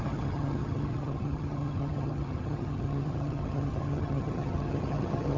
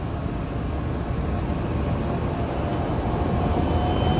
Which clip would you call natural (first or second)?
second